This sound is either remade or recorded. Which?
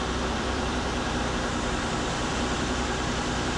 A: remade